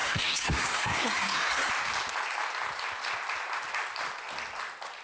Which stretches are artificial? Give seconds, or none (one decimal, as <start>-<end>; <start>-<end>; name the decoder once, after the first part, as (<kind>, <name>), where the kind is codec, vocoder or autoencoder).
0.0-1.7 (codec, SNAC)